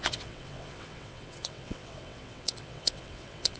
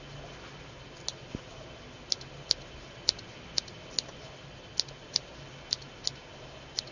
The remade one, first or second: first